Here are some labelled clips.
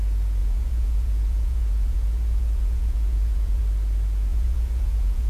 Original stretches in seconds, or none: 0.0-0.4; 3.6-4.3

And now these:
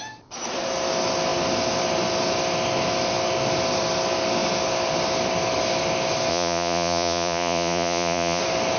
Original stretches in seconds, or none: 0.0-6.3; 8.4-8.8

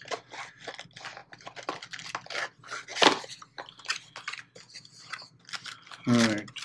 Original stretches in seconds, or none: 0.0-6.6

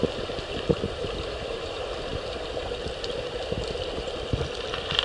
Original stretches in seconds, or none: 0.0-5.0